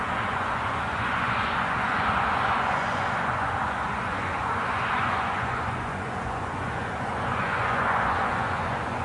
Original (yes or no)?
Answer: no